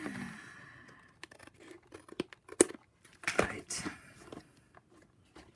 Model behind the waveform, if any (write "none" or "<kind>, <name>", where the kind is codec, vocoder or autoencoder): none